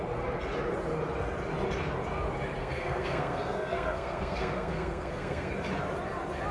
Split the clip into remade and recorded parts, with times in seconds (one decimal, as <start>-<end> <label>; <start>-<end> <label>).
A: 0.0-2.6 recorded; 2.6-5.5 remade; 5.5-6.5 recorded

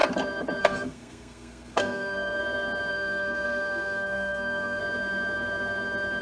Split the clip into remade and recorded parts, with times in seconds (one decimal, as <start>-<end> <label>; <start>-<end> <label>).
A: 0.0-0.6 recorded; 0.6-2.4 remade; 2.4-2.9 recorded; 2.9-4.8 remade; 4.8-6.2 recorded

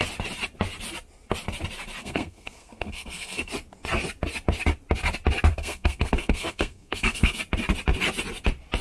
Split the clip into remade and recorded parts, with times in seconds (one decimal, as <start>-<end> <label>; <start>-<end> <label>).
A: 0.0-2.0 recorded; 2.0-3.5 remade; 3.5-5.5 recorded; 5.5-7.4 remade; 7.4-8.8 recorded

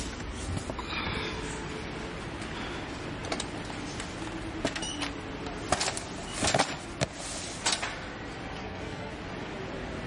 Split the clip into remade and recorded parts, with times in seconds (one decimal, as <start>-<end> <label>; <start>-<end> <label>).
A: 0.0-8.6 recorded; 8.6-9.1 remade; 9.1-10.1 recorded

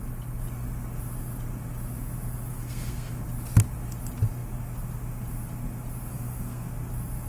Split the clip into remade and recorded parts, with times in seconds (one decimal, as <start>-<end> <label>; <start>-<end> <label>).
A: 0.0-2.5 recorded; 2.5-3.2 remade; 3.2-6.1 recorded; 6.1-6.7 remade; 6.7-7.3 recorded

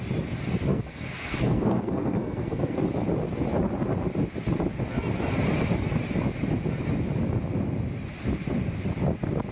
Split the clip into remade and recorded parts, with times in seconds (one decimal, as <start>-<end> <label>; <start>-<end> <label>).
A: 0.0-0.7 recorded; 0.7-2.8 remade; 2.8-9.5 recorded

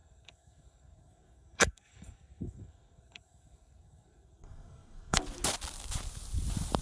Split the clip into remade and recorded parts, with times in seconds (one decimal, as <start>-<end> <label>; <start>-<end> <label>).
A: 0.0-5.2 remade; 5.2-6.8 recorded